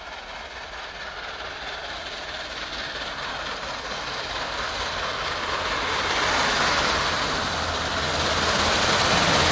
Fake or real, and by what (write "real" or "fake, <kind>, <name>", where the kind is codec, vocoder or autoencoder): real